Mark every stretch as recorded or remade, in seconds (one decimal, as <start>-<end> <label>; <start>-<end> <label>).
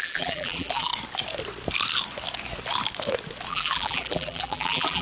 0.0-0.9 remade; 0.9-3.5 recorded; 3.5-5.0 remade